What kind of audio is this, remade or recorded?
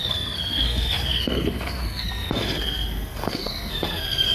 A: remade